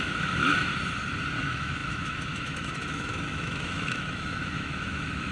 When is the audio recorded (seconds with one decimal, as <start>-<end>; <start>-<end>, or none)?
0.7-1.4